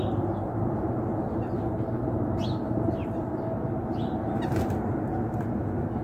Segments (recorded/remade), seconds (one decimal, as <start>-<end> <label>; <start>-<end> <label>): 0.0-6.0 recorded